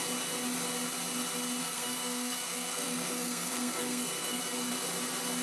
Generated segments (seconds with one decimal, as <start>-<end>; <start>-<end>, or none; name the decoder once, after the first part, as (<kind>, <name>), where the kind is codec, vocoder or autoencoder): 1.6-4.4 (codec, SNAC)